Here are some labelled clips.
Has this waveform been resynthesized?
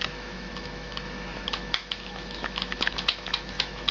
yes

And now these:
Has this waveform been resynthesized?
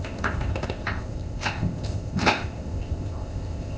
yes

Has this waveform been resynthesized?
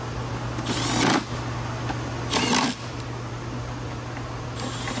no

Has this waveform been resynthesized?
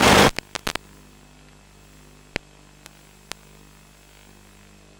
no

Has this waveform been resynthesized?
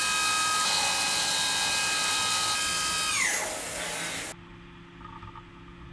no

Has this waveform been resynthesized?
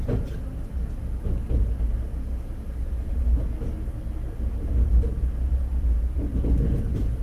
no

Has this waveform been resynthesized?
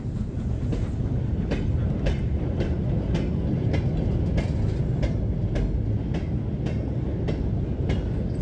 no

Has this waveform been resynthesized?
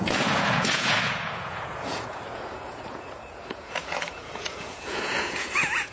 yes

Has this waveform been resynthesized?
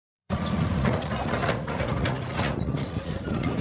yes